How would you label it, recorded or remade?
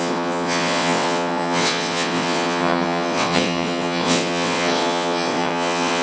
remade